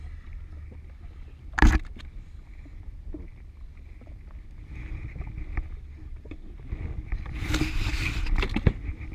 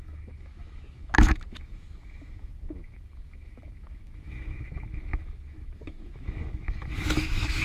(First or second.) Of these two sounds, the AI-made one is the second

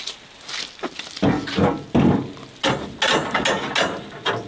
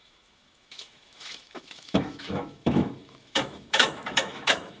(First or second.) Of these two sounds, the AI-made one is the second